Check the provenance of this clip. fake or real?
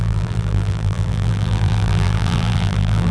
fake